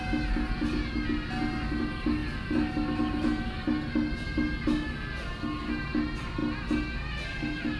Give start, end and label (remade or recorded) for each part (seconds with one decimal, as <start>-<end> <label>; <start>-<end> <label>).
0.0-7.8 recorded